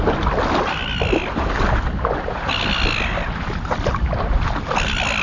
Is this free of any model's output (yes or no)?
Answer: yes